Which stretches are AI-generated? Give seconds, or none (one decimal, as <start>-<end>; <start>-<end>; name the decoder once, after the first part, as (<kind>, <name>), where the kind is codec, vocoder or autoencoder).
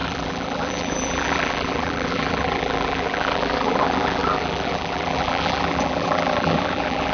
0.0-7.1 (vocoder, BigVGAN v2)